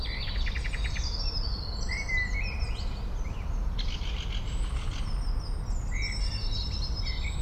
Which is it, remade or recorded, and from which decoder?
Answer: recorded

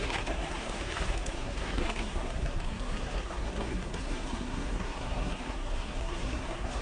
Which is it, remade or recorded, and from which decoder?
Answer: remade, codec, SNAC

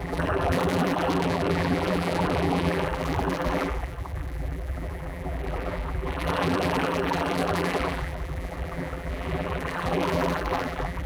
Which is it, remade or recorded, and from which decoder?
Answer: remade, vocoder, BigVGAN v2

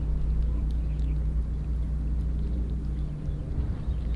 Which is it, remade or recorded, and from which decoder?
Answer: recorded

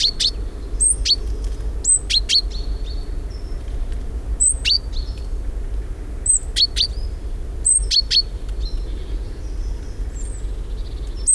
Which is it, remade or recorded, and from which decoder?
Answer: recorded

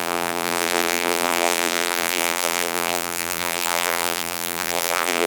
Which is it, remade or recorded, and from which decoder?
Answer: remade, vocoder, BigVGAN v2